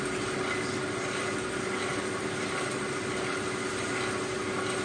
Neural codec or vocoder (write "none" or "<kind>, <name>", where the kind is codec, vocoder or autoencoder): none